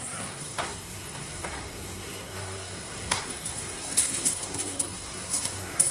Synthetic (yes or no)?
yes